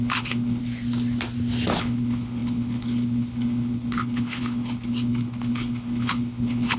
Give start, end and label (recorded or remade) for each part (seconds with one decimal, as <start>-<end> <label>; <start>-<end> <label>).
0.0-0.6 remade; 0.6-1.8 recorded; 1.8-6.8 remade